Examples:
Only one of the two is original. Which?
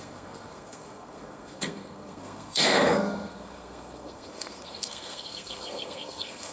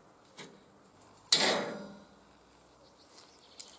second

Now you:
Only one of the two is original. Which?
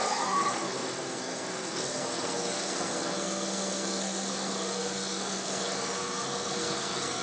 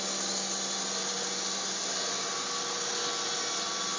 second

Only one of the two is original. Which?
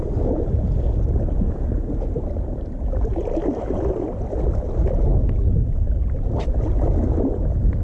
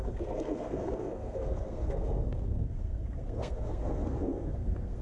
first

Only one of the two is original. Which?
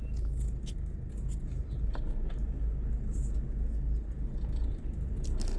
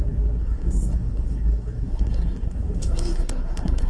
first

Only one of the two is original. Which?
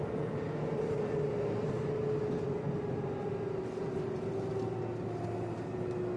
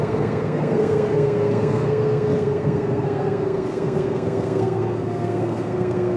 first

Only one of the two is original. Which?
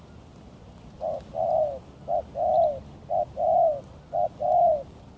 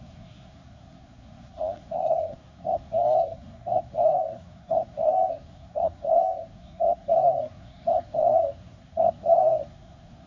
first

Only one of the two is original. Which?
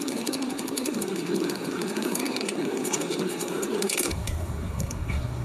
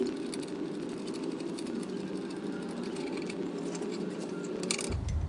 second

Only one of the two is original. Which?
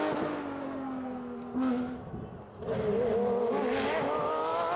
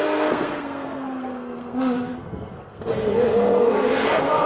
first